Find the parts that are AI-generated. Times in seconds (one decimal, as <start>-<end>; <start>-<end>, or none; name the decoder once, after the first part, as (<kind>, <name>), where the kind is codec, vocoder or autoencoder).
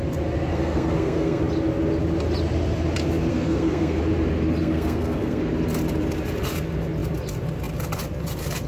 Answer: 0.5-1.4 (codec, SNAC); 3.3-4.0; 4.6-5.4